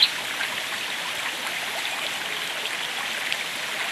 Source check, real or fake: real